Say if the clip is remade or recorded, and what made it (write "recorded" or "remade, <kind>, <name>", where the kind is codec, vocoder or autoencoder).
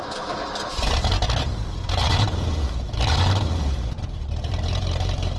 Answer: remade, vocoder, BigVGAN v2